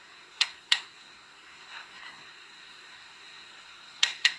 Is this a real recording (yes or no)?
no